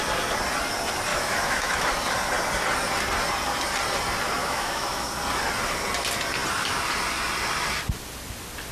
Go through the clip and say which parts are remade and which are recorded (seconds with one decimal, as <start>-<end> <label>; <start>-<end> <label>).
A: 0.0-1.1 recorded; 1.1-1.9 remade; 1.9-4.4 recorded; 4.4-5.1 remade; 5.1-8.7 recorded